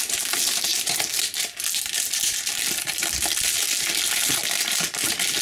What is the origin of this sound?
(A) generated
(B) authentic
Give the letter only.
B